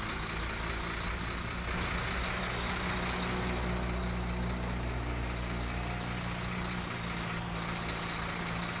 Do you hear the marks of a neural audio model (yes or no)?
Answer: no